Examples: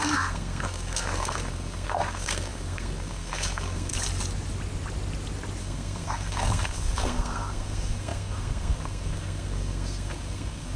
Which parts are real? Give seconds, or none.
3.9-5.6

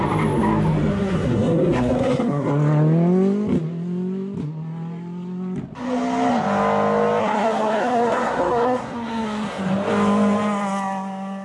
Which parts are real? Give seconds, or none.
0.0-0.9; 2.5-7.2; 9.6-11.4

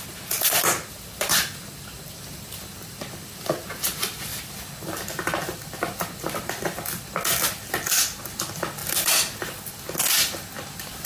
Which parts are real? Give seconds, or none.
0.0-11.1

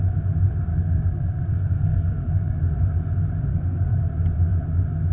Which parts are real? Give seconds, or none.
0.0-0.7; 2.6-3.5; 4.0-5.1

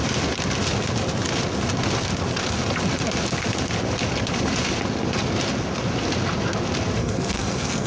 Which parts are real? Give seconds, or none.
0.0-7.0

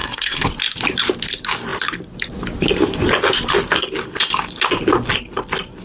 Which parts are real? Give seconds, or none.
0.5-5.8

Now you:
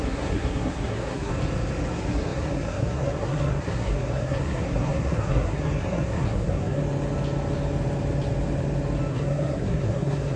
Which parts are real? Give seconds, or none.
1.3-1.9; 6.8-9.1

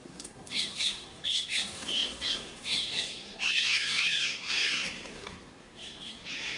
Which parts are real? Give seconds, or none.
none